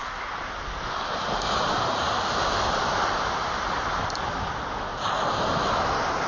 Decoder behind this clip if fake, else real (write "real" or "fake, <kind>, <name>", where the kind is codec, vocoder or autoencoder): real